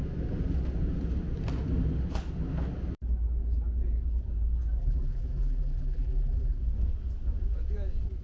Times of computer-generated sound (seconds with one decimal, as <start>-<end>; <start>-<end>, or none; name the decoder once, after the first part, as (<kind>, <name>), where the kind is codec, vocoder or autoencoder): 4.8-6.6 (vocoder, BigVGAN v2)